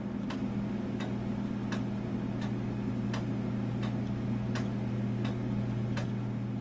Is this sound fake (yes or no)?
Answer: no